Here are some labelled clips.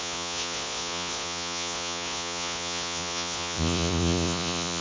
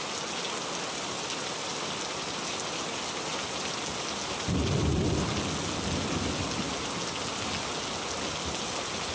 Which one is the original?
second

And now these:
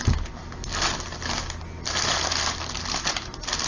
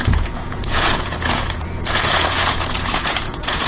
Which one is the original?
first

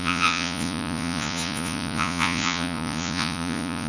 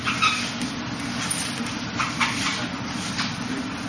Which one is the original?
second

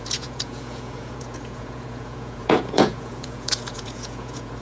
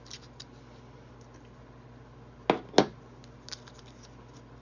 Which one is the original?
second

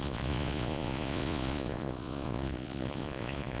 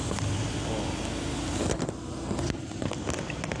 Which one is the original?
second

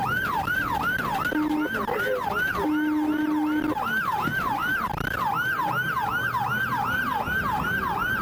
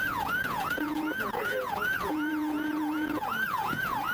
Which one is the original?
first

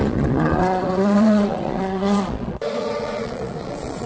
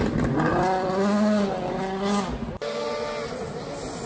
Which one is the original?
second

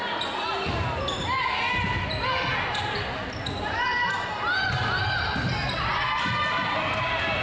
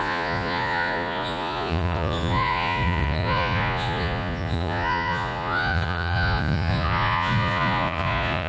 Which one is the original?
first